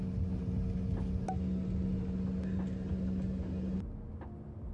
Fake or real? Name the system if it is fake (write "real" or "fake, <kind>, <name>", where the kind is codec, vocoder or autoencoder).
real